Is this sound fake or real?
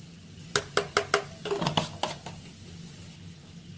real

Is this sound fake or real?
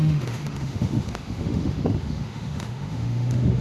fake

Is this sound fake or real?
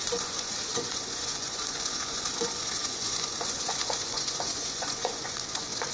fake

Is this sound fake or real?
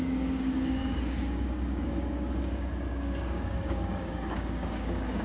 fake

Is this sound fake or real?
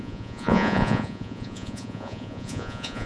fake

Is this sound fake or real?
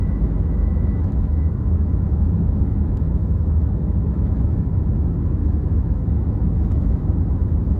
fake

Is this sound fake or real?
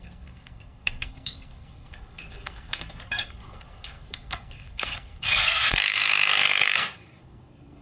fake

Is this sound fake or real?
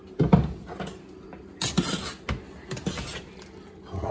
real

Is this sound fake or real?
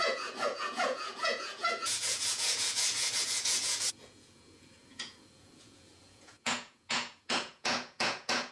fake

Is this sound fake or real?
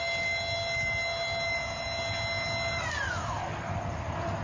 real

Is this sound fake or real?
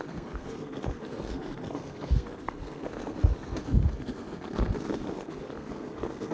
fake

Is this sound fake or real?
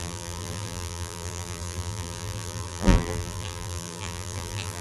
fake